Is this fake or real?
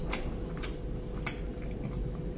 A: real